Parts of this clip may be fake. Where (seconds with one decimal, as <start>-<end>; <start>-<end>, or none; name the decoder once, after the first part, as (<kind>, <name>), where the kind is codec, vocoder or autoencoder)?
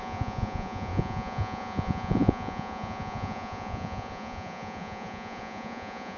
0.0-6.2 (vocoder, Vocos)